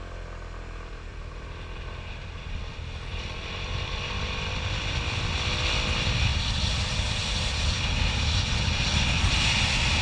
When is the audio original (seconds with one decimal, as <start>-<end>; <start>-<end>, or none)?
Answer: 0.0-1.1; 2.6-3.1; 5.5-6.3; 7.8-10.0